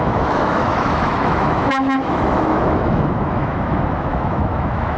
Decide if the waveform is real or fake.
fake